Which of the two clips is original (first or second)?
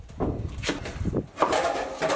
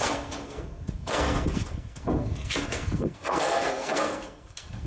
first